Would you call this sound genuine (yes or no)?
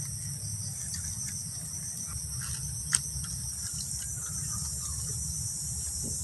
yes